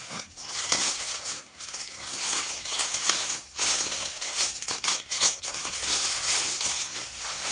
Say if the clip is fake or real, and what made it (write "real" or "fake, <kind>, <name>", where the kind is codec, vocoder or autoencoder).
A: fake, codec, SNAC